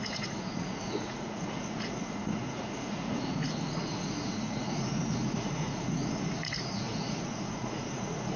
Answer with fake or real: fake